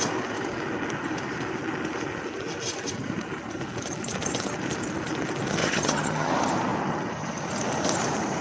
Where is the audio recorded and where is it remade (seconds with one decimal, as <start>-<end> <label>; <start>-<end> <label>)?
0.0-5.6 recorded; 5.6-6.3 remade; 6.3-8.4 recorded